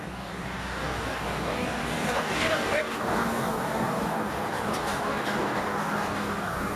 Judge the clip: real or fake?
fake